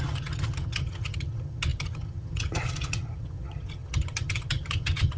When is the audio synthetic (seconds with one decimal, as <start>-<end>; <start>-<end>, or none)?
0.0-5.2